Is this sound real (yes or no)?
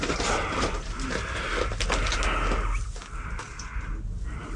yes